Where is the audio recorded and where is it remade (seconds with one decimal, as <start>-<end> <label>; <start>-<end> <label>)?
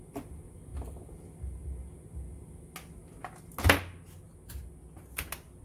0.0-5.6 recorded